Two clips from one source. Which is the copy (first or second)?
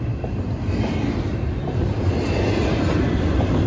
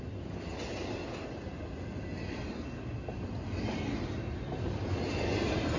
first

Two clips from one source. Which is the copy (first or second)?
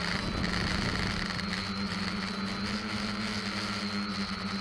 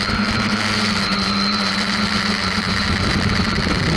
second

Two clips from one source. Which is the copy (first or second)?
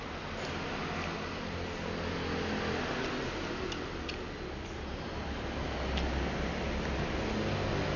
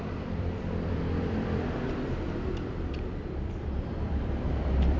second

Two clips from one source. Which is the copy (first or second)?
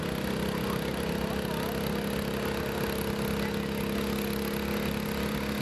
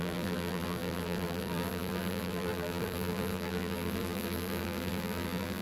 second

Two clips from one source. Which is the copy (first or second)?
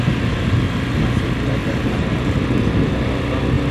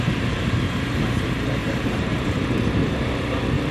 second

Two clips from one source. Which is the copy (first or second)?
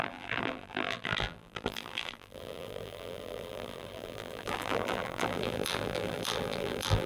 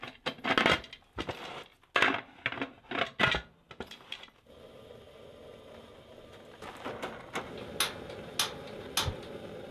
first